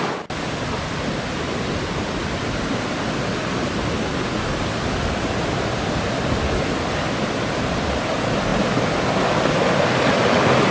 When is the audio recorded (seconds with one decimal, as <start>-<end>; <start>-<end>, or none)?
0.0-10.7